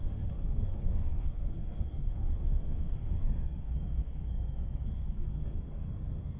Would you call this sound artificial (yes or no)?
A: yes